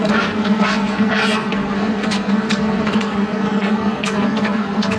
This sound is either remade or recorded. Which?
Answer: remade